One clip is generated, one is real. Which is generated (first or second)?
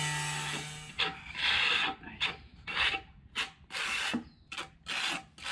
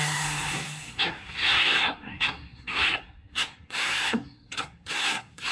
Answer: second